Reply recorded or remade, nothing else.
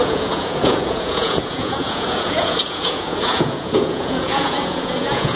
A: remade